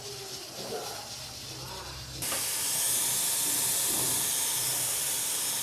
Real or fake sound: real